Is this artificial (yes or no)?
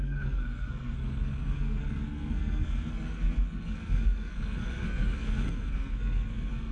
yes